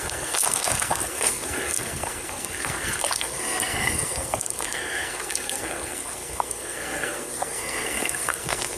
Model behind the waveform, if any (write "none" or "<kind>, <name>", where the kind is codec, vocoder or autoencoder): codec, SNAC